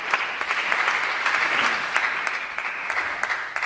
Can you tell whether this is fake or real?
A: real